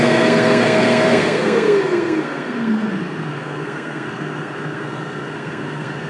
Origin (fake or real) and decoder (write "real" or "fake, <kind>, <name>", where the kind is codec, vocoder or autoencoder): fake, codec, SNAC